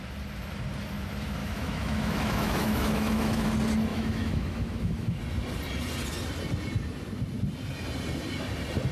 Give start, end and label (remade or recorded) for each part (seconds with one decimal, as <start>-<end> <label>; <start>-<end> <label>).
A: 0.0-1.4 recorded; 1.4-3.5 remade; 3.5-3.9 recorded; 3.9-5.2 remade; 5.2-8.9 recorded